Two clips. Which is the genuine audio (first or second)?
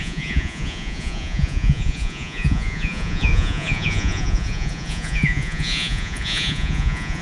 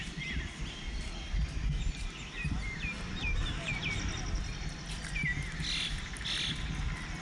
second